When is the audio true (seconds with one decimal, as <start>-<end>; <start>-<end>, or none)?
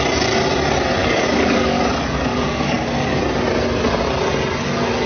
0.0-1.0; 1.8-2.3; 3.2-5.1